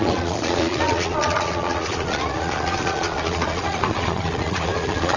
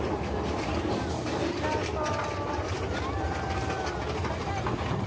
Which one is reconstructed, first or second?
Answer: first